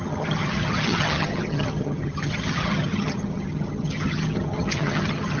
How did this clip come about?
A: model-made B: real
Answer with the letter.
A